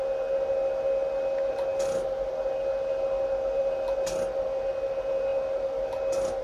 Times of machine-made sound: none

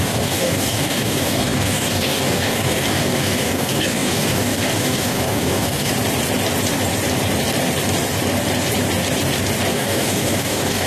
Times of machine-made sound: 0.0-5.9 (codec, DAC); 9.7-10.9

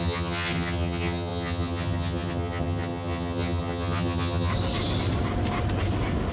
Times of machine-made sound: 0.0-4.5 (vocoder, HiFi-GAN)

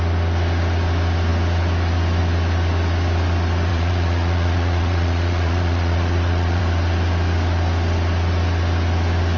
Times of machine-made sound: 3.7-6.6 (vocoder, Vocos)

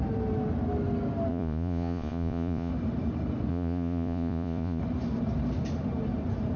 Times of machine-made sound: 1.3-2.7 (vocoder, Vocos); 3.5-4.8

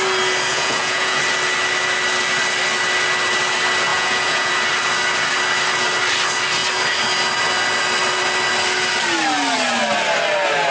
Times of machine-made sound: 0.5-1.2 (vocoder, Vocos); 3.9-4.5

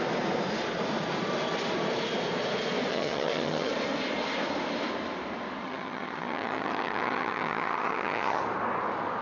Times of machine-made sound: 2.9-3.7 (vocoder, HiFi-GAN); 5.6-8.4